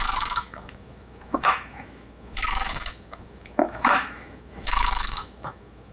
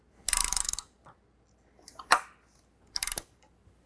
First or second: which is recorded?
second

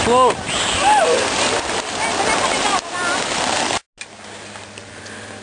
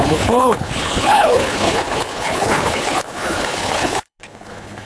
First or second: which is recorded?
first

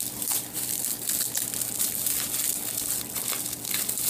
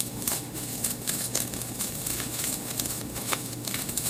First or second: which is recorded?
first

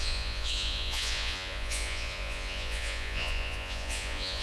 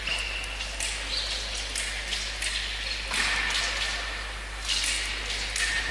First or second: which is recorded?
second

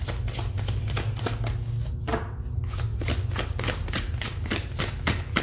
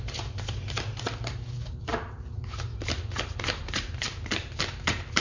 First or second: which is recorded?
first